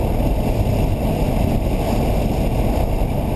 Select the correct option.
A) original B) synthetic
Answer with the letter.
A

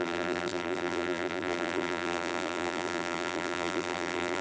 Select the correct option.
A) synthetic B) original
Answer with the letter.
A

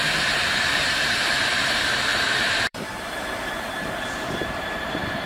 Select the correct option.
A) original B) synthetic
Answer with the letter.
B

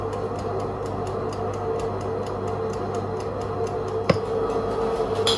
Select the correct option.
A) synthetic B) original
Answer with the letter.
B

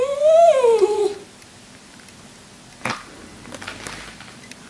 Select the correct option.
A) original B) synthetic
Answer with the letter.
A